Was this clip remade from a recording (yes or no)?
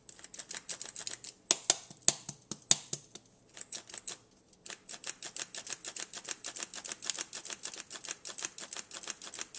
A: no